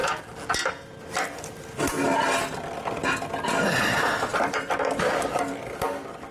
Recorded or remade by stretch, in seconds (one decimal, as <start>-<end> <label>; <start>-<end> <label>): 0.0-0.7 recorded; 0.7-2.1 remade; 2.1-3.6 recorded; 3.6-6.3 remade

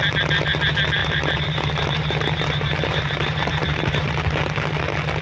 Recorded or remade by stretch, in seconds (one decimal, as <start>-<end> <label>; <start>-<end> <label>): 0.0-1.0 recorded; 1.0-4.1 remade; 4.1-5.2 recorded

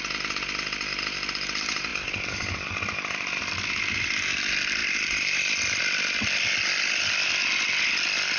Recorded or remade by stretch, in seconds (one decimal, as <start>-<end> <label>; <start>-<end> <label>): 0.0-1.9 recorded; 1.9-3.4 remade; 3.4-4.8 recorded; 4.8-5.8 remade; 5.8-8.4 recorded

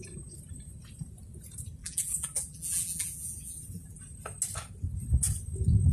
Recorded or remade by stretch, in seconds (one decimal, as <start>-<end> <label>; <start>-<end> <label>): 0.0-1.8 recorded; 1.8-4.0 remade; 4.0-5.9 recorded

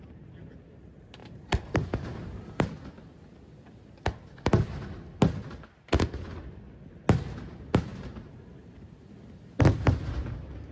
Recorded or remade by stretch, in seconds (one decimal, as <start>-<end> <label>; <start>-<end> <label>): 0.0-1.2 recorded; 1.2-2.7 remade; 2.7-7.9 recorded; 7.9-9.1 remade; 9.1-10.7 recorded

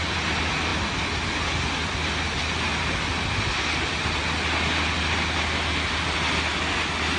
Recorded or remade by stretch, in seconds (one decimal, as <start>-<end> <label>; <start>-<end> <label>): 0.0-7.2 recorded

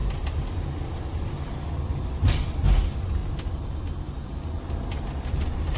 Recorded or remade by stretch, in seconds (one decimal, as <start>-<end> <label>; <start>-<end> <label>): 0.0-1.3 remade; 1.3-5.8 recorded